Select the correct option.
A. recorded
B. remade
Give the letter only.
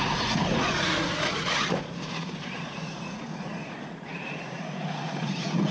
B